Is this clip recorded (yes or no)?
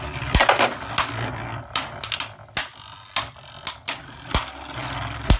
yes